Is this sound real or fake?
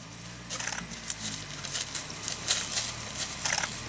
real